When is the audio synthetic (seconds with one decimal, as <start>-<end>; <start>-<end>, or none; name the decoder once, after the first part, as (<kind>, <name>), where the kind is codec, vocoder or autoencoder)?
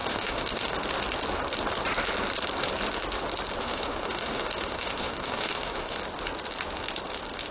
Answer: 0.0-0.7 (autoencoder, DAC-VAE); 3.6-6.0